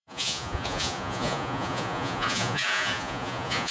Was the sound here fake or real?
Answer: fake